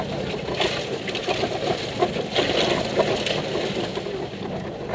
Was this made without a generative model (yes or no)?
yes